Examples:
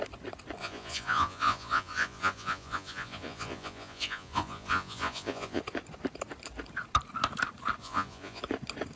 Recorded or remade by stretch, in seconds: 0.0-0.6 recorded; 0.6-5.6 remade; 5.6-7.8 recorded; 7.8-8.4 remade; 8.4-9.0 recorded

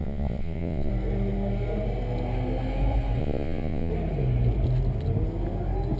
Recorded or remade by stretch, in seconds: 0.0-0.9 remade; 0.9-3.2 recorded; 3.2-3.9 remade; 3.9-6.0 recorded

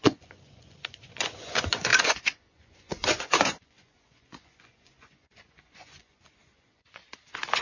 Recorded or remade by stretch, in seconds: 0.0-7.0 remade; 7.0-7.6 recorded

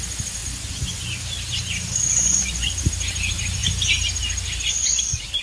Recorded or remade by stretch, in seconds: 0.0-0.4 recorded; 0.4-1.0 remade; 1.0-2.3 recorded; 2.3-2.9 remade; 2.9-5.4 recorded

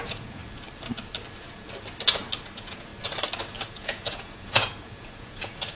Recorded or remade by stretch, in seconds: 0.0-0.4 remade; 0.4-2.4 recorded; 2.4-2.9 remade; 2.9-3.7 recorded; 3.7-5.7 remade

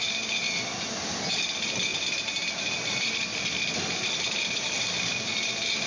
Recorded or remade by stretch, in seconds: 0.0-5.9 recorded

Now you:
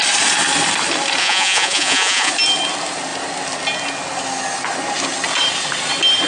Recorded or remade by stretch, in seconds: 0.0-1.2 recorded; 1.2-2.3 remade; 2.3-6.3 recorded

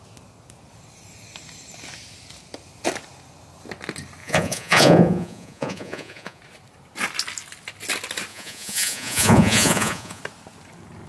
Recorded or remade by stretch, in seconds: 0.0-4.2 recorded; 4.2-6.4 remade; 6.4-8.3 recorded; 8.3-10.2 remade; 10.2-11.1 recorded